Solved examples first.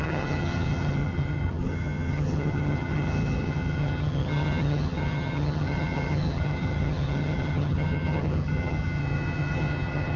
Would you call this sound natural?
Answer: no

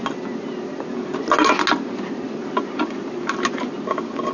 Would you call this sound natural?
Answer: yes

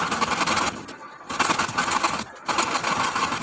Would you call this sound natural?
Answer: yes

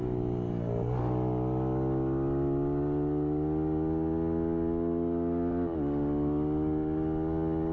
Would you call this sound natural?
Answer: yes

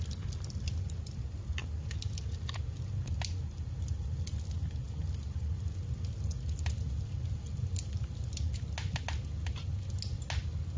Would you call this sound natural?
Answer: yes